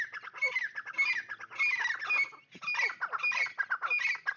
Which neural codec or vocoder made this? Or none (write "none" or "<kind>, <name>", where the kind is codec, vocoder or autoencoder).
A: none